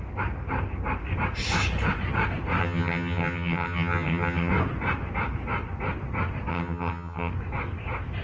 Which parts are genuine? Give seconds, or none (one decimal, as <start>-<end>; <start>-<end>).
0.0-2.6; 4.5-6.5; 7.3-8.2